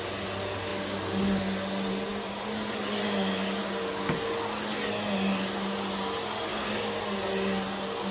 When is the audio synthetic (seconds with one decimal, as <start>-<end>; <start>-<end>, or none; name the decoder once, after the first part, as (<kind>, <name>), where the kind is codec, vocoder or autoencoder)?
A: 6.5-7.0 (codec, DAC)